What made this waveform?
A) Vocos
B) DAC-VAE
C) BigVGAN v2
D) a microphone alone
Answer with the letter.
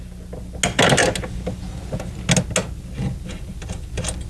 D